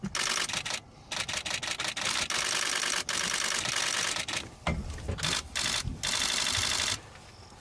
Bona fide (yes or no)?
yes